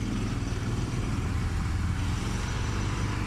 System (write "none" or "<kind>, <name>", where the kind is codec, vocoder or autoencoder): vocoder, BigVGAN v2